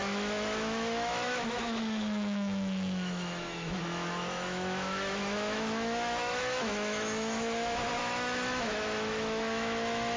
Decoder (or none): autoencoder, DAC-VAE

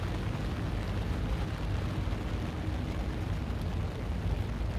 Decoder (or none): none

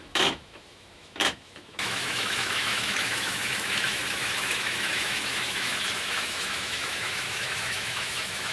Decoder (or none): autoencoder, DAC-VAE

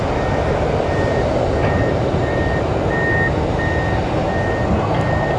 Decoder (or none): none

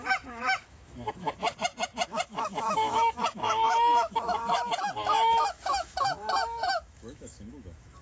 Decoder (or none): autoencoder, DAC-VAE